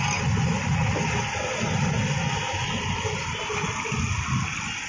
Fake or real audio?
real